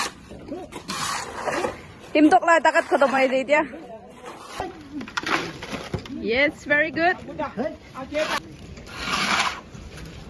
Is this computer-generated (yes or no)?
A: yes